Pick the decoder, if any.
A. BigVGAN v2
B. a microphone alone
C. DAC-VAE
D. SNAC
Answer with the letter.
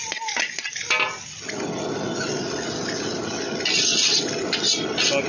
B